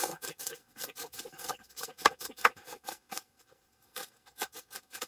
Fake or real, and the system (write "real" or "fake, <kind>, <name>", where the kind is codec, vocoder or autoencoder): fake, codec, SNAC